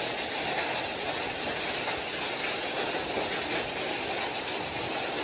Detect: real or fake real